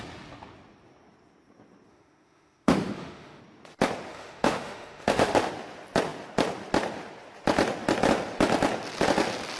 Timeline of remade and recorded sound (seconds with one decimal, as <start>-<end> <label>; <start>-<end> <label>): 0.0-1.9 recorded; 1.9-3.4 remade; 3.4-4.1 recorded; 4.1-5.5 remade; 5.5-9.6 recorded